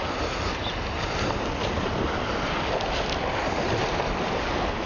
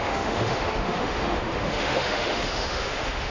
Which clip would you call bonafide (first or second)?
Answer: first